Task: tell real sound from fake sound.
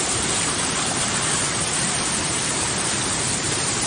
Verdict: fake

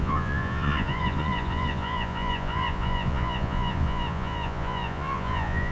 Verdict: fake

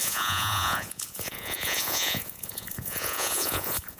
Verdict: fake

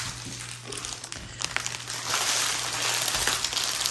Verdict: real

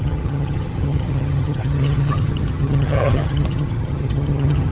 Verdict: fake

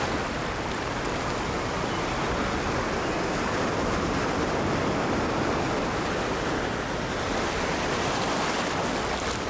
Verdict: real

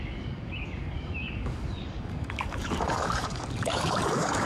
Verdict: fake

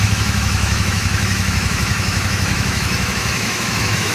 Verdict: fake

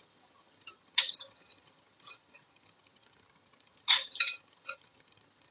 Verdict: fake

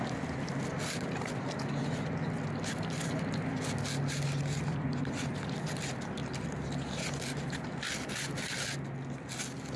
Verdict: real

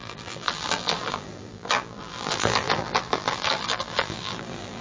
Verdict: fake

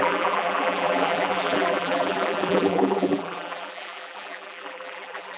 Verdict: fake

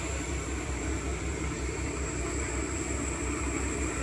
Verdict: fake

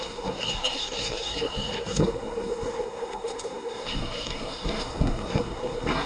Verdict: fake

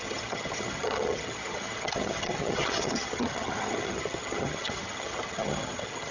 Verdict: fake